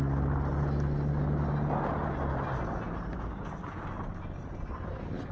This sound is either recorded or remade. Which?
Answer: recorded